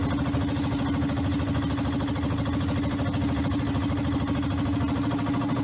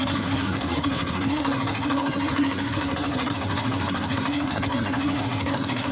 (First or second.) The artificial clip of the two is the second